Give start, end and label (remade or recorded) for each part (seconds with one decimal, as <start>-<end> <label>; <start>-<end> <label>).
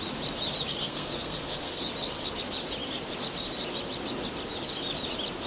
0.0-0.8 recorded; 0.8-1.8 remade; 1.8-5.5 recorded